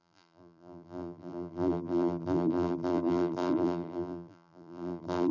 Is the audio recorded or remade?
remade